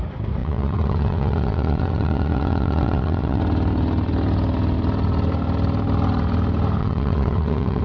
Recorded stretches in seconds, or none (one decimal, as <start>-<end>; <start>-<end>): 0.0-0.4; 3.4-6.8